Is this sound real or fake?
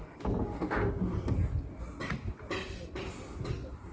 real